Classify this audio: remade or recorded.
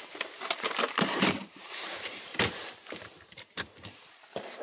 remade